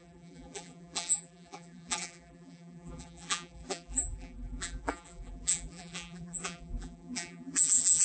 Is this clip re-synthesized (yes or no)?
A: yes